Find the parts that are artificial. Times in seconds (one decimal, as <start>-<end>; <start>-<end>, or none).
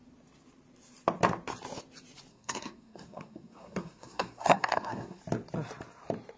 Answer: 2.3-5.2